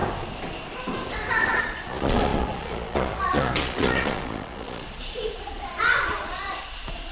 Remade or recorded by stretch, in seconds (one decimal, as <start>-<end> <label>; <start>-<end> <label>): 0.0-1.6 recorded; 1.6-7.1 remade